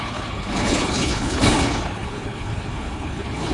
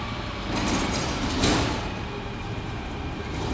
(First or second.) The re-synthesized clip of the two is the first